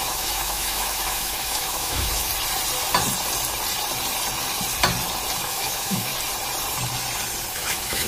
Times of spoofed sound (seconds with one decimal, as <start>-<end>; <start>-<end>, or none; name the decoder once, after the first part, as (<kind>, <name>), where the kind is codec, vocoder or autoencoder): 0.0-2.3 (autoencoder, DAC-VAE); 5.4-6.1; 7.5-8.1